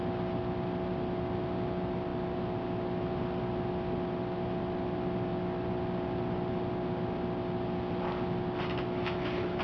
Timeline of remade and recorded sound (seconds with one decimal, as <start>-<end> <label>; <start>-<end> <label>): 0.0-9.6 recorded